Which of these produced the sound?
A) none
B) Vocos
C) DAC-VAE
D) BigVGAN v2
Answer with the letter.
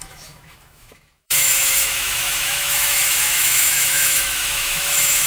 C